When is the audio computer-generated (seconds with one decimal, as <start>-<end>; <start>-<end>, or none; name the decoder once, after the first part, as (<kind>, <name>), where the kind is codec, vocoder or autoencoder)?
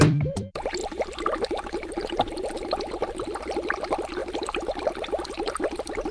0.0-6.1 (vocoder, BigVGAN v2)